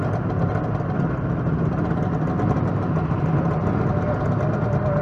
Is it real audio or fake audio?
real